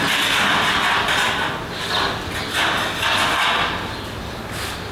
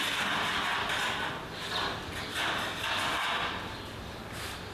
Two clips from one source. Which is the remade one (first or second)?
second